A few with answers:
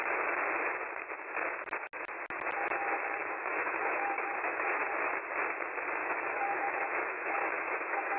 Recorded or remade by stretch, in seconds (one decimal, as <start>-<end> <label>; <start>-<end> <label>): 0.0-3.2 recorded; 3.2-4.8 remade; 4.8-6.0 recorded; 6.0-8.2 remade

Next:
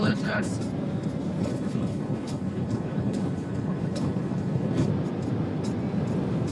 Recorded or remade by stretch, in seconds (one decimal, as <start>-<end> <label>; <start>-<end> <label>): 0.0-0.5 remade; 0.5-1.4 recorded; 1.4-4.9 remade; 4.9-6.5 recorded

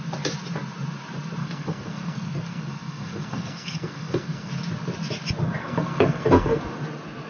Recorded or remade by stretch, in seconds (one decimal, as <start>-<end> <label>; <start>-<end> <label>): 0.0-1.4 recorded; 1.4-4.5 remade; 4.5-5.6 recorded; 5.6-6.6 remade; 6.6-7.3 recorded